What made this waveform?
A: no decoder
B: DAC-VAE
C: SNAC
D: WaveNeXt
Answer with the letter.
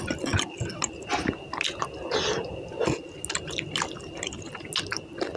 A